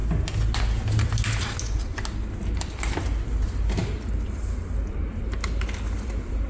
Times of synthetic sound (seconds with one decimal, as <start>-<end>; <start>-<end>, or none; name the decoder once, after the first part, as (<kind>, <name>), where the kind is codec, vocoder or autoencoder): none